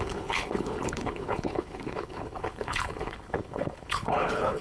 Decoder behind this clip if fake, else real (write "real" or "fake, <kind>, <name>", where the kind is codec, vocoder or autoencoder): fake, codec, HILCodec